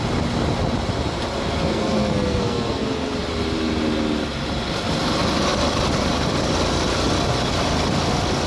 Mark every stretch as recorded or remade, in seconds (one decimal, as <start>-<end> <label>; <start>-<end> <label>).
0.0-1.7 recorded; 1.7-3.1 remade; 3.1-8.5 recorded